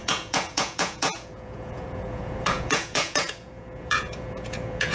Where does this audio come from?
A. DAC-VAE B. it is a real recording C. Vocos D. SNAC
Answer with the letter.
C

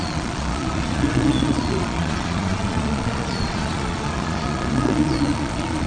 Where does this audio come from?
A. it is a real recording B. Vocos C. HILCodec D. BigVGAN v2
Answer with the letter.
B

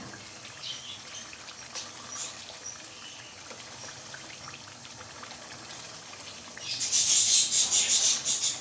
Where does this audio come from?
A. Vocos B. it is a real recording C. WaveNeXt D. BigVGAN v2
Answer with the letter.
B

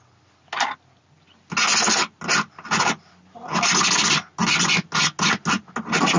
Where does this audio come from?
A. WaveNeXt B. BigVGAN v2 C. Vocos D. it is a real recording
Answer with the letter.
D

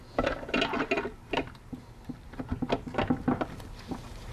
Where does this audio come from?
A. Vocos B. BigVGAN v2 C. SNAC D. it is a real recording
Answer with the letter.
D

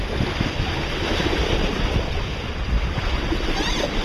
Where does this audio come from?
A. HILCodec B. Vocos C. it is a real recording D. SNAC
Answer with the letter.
C